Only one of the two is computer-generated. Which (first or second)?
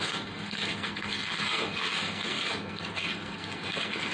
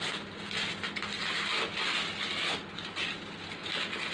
first